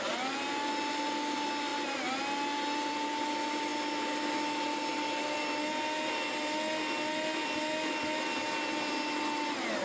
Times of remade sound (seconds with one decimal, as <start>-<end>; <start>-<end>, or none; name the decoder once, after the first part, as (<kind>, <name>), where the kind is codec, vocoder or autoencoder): none

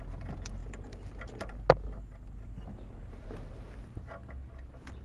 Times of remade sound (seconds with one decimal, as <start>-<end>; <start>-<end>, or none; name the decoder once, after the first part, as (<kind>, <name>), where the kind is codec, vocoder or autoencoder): none

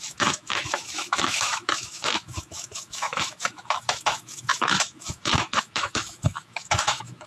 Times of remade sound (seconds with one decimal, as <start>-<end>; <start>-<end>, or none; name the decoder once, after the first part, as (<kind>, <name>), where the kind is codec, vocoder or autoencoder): 0.0-7.3 (autoencoder, DAC-VAE)

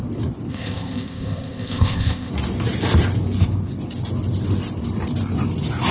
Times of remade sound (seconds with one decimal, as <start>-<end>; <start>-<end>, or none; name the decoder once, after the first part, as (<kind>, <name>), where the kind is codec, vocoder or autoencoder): 0.5-2.3 (codec, ZipCodec)

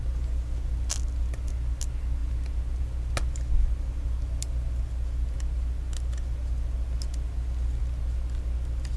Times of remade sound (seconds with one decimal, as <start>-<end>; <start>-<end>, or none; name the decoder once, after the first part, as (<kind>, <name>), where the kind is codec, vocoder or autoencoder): none

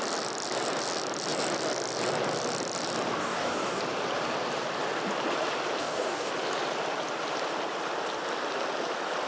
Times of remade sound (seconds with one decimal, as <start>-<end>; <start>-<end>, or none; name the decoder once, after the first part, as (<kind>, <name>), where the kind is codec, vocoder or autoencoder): 3.2-3.8 (codec, DAC); 5.8-6.3

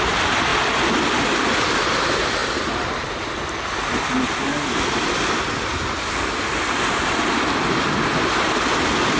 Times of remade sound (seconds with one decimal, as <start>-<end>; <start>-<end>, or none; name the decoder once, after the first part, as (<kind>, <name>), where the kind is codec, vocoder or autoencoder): none